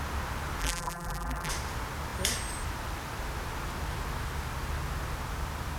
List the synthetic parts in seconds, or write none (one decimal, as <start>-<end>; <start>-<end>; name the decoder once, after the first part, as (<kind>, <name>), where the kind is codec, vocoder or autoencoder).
0.6-1.5 (vocoder, BigVGAN v2)